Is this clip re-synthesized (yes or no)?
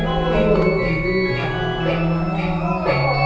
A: no